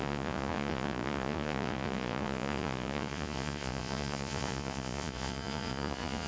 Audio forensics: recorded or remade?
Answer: remade